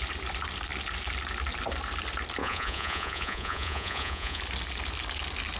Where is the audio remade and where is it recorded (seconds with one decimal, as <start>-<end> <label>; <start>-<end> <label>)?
0.0-2.4 recorded; 2.4-4.4 remade; 4.4-5.6 recorded